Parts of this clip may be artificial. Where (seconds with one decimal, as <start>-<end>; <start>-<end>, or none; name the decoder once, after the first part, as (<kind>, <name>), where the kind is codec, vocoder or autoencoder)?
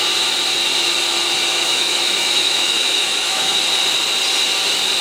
1.5-3.6 (autoencoder, DAC-VAE)